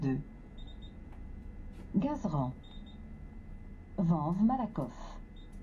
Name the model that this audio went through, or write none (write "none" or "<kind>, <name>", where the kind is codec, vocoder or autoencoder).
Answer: none